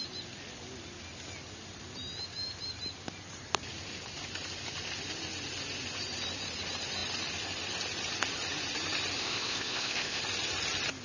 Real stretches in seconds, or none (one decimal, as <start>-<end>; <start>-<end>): 0.0-9.2; 10.2-11.0